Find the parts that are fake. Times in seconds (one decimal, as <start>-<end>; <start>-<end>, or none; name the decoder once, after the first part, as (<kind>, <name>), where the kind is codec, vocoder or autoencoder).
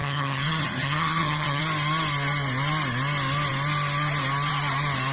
0.0-1.6 (vocoder, HiFi-GAN)